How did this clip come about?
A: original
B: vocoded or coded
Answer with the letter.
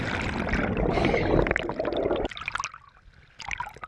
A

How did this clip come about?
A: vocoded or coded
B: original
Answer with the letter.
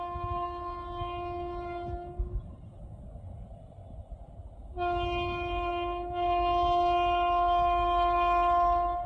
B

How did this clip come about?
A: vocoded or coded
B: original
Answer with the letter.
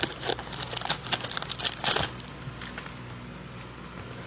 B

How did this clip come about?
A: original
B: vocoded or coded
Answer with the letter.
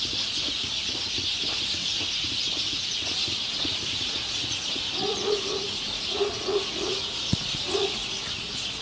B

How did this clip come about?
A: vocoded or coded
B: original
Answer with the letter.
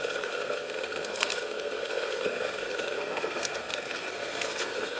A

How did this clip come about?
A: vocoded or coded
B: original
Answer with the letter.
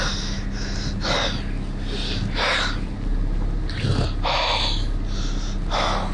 B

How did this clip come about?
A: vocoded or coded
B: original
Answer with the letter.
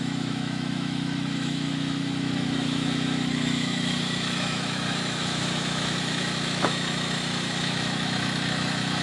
A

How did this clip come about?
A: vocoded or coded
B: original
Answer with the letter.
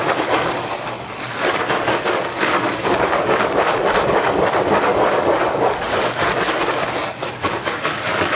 A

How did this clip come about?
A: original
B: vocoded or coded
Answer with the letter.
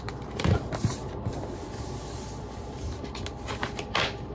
B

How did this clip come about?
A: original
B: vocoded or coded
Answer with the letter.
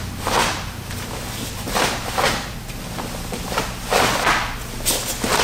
A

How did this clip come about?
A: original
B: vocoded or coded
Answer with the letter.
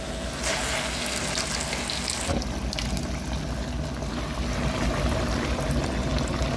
A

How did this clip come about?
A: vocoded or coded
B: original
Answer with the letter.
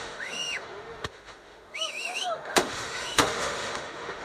A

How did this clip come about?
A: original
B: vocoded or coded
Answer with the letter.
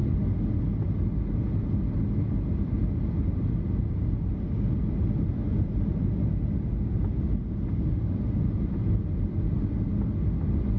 A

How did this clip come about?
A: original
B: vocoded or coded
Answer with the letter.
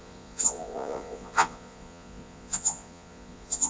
B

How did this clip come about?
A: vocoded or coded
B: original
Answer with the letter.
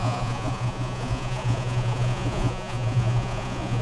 A